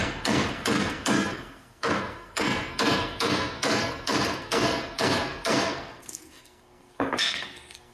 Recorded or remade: remade